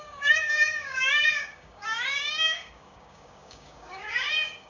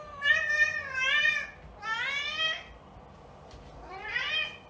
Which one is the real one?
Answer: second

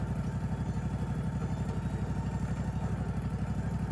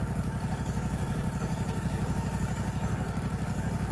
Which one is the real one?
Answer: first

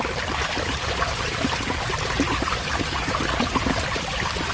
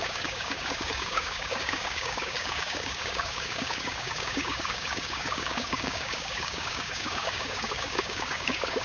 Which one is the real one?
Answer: first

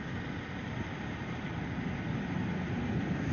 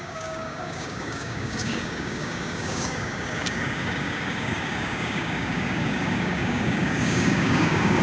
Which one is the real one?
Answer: first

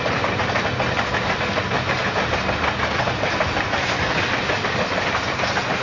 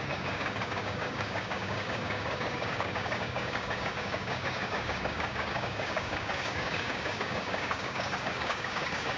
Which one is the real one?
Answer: first